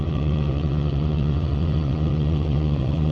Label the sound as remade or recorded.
remade